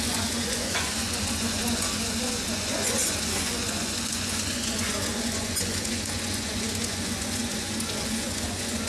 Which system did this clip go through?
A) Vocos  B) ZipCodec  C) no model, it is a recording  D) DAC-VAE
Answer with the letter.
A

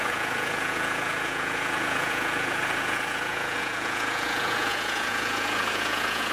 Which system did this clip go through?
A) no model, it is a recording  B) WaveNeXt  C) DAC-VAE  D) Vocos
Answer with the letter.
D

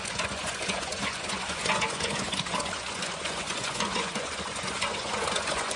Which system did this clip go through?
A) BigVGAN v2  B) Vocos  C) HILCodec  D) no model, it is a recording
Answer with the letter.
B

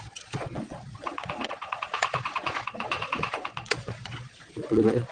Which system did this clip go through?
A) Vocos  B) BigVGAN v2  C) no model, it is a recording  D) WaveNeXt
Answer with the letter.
A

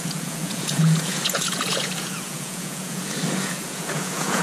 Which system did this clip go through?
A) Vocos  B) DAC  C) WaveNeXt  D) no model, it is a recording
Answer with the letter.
A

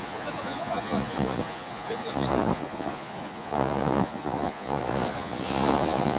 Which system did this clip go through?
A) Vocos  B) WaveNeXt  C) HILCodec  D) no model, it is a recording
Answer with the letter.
A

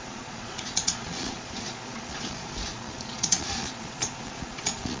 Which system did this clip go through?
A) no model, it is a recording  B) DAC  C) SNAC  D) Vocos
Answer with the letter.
D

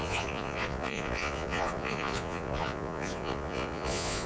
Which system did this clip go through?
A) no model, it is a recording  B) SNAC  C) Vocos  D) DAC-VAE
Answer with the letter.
C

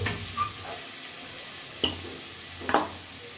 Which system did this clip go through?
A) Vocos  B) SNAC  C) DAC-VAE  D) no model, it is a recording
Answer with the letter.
D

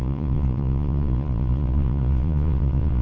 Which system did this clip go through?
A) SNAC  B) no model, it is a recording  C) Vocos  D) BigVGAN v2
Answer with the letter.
C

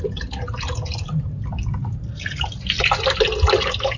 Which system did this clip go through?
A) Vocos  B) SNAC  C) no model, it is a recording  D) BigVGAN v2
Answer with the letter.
C